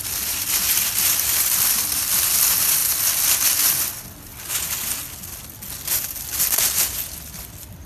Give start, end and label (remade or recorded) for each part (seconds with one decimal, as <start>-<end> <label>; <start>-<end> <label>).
0.0-2.8 remade; 2.8-3.9 recorded; 3.9-4.3 remade; 4.3-7.1 recorded; 7.1-7.9 remade